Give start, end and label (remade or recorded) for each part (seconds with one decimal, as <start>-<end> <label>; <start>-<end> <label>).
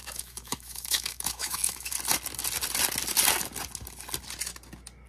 0.0-1.9 remade; 1.9-5.1 recorded